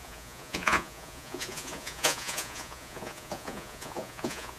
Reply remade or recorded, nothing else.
remade